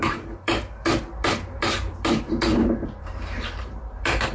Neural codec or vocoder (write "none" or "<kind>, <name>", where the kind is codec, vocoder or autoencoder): vocoder, BigVGAN v2